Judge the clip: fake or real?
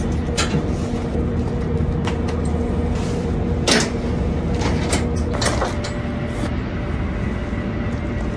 real